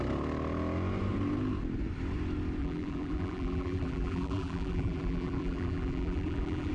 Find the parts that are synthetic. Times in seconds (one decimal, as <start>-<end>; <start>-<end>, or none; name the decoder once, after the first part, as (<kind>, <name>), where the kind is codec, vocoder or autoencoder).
2.6-6.7 (vocoder, BigVGAN v2)